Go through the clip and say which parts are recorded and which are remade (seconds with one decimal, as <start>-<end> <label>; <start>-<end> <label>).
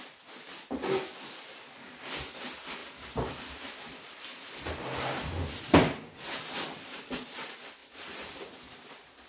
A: 0.0-7.8 recorded; 7.8-8.7 remade; 8.7-9.3 recorded